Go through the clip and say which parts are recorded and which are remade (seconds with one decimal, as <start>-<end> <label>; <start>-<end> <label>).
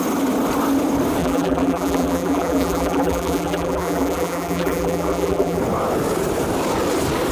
0.0-1.2 recorded; 1.2-5.6 remade; 5.6-7.3 recorded